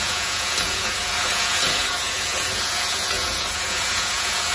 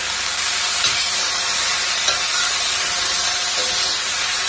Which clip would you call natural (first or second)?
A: second